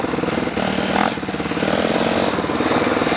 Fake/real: real